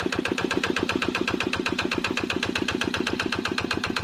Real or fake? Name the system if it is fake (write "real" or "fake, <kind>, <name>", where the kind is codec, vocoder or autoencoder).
fake, vocoder, BigVGAN v2